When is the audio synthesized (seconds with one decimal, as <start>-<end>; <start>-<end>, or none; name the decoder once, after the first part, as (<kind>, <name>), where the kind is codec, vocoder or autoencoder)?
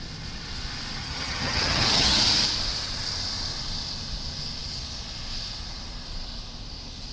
1.0-2.2 (vocoder, HiFi-GAN)